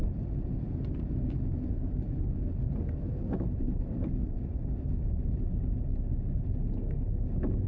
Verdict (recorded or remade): recorded